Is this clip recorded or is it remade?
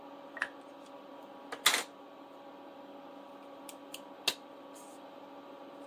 recorded